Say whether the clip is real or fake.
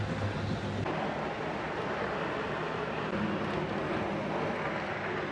real